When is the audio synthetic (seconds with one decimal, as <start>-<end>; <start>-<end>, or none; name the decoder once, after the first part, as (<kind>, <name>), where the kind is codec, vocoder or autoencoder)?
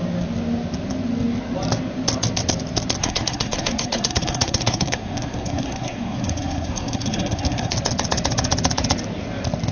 3.0-7.7 (codec, SNAC)